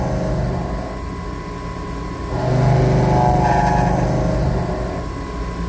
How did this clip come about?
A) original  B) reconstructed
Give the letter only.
A